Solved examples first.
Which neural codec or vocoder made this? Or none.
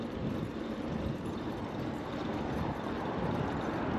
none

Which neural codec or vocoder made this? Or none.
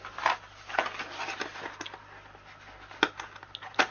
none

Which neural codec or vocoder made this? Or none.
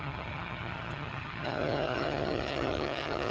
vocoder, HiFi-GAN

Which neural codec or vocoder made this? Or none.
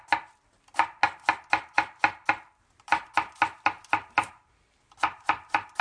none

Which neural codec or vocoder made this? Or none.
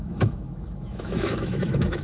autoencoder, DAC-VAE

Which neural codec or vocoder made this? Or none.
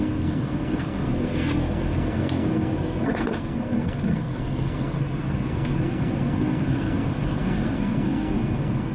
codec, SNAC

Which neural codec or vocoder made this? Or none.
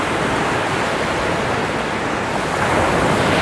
none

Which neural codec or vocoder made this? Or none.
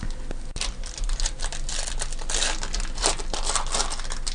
none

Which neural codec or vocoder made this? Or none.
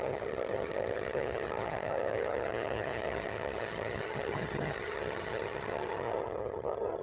vocoder, HiFi-GAN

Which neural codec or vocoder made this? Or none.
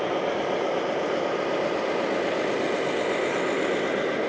none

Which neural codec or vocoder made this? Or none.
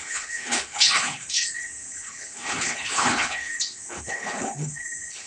codec, HILCodec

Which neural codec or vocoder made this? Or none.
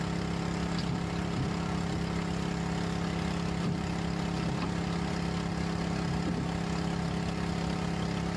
none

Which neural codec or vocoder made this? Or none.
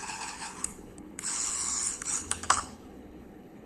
codec, HILCodec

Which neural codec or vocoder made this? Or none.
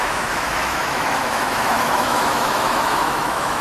autoencoder, DAC-VAE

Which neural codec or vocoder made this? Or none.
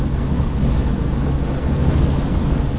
codec, SNAC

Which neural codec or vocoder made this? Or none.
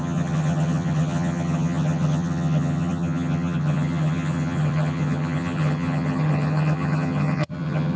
vocoder, HiFi-GAN